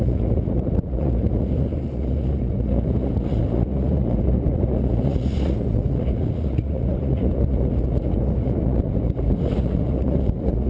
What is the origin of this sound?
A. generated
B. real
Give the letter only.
A